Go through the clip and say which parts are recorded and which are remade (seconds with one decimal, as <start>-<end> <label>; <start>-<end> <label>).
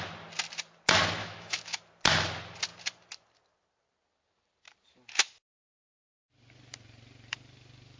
0.0-1.2 recorded; 1.2-1.8 remade; 1.8-8.0 recorded